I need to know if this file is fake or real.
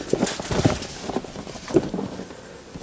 real